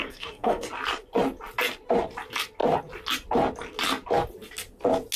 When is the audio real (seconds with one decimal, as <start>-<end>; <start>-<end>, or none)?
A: 0.7-5.2